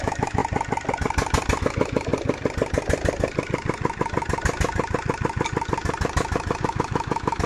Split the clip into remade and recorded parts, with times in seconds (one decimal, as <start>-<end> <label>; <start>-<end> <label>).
0.0-0.4 remade; 0.4-1.6 recorded; 1.6-2.1 remade; 2.1-6.6 recorded; 6.6-7.5 remade